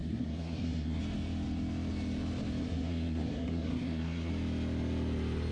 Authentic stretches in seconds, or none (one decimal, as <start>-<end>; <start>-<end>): 1.0-2.6; 4.3-5.5